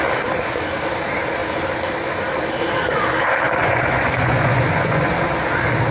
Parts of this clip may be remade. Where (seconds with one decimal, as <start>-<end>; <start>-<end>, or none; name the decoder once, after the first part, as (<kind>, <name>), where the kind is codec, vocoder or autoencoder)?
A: 3.6-5.1 (vocoder, Vocos)